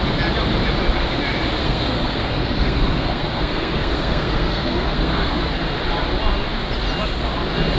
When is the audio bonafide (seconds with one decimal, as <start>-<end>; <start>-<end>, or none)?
0.0-1.6; 5.4-7.8